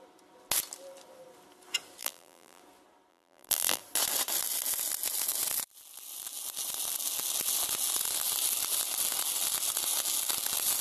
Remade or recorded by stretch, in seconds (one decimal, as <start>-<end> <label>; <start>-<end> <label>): 0.0-2.0 recorded; 2.0-2.6 remade; 2.6-3.1 recorded; 3.1-3.8 remade; 3.8-10.8 recorded